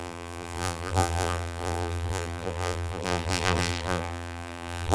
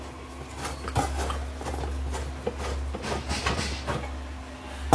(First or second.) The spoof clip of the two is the first